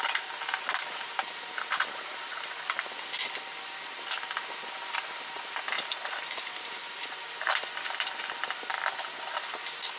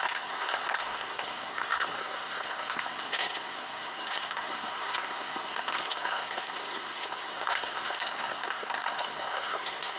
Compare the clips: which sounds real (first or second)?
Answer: first